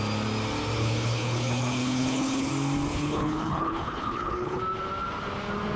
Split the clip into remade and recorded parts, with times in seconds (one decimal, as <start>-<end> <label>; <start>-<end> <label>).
0.0-0.8 recorded; 0.8-2.5 remade; 2.5-2.9 recorded; 2.9-4.6 remade; 4.6-5.8 recorded